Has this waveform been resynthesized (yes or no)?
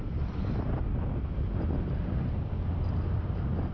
no